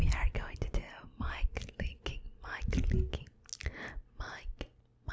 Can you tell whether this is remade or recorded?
recorded